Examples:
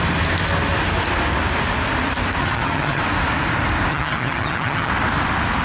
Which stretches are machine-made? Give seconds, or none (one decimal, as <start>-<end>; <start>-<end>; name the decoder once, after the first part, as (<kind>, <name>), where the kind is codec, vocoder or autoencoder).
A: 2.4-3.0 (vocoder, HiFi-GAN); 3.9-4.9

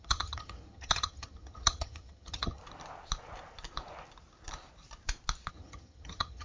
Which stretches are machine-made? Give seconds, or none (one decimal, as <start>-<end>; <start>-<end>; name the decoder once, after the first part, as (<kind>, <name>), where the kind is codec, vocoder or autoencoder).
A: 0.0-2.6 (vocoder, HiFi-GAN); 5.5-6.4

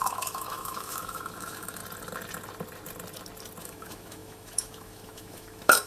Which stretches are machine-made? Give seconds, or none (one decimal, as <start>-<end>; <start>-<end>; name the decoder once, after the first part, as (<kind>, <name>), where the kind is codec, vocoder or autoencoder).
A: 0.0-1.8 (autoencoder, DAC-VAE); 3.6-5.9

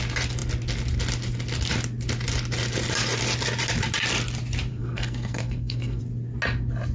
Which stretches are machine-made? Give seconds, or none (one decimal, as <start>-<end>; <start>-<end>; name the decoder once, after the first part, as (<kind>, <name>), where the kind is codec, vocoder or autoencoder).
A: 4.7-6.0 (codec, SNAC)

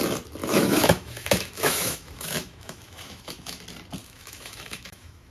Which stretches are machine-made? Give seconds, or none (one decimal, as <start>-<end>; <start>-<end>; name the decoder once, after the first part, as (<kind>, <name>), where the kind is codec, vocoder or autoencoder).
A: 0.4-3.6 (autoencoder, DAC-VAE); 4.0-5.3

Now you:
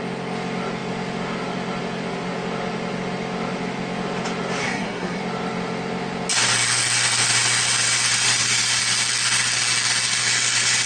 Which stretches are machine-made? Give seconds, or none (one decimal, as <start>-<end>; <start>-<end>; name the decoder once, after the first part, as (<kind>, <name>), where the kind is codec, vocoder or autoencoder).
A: 4.6-5.2 (codec, SNAC)

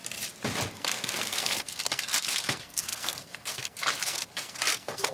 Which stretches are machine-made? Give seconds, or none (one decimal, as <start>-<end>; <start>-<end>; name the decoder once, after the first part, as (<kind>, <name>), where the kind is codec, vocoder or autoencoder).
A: 0.7-5.1 (codec, SNAC)